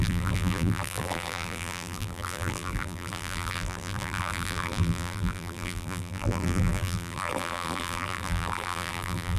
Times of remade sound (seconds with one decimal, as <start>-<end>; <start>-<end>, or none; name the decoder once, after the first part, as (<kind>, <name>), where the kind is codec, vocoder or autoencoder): 0.0-9.4 (vocoder, BigVGAN v2)

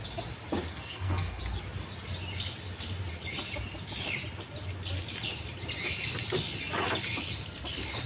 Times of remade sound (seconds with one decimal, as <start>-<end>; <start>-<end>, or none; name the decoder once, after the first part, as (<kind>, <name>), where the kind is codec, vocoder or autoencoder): 0.7-1.4 (codec, SNAC)